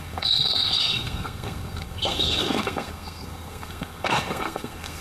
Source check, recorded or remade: remade